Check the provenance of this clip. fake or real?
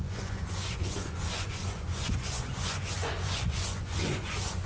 fake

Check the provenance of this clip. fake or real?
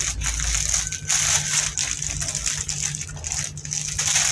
real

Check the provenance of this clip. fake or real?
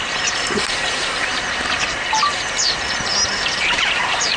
fake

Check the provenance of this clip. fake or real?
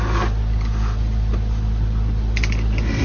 real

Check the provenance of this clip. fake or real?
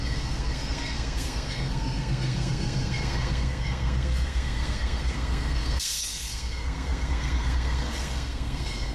fake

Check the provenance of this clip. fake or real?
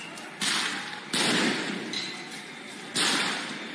real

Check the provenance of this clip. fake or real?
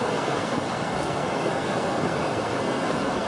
fake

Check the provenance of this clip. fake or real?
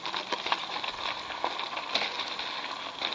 real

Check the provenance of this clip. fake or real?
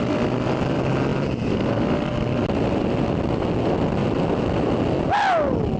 real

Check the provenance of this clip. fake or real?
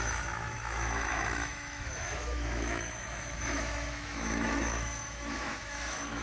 fake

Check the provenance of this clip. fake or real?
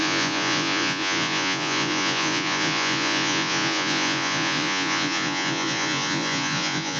fake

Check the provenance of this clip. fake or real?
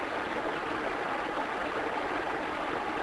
real